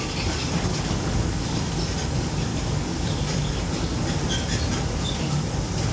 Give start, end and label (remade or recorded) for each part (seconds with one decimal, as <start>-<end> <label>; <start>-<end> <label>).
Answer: 0.0-0.7 recorded; 0.7-1.6 remade; 1.6-2.5 recorded; 2.5-3.5 remade; 3.5-5.9 recorded